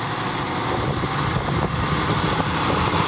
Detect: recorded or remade recorded